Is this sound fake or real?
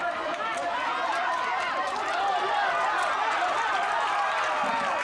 real